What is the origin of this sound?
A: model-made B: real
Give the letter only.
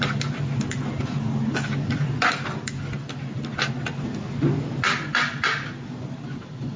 B